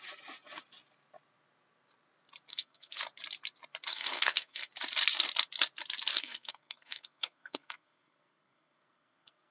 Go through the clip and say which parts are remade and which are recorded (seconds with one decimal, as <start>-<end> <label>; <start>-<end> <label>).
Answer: 0.0-2.5 recorded; 2.5-3.0 remade; 3.0-3.9 recorded; 3.9-4.7 remade; 4.7-6.1 recorded; 6.1-9.5 remade